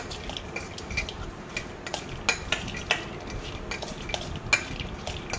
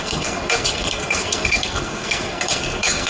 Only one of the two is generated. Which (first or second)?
second